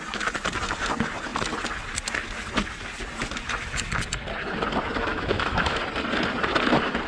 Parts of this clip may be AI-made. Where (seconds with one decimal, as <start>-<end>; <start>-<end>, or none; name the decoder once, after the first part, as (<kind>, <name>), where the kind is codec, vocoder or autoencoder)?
5.1-5.8 (autoencoder, DAC-VAE)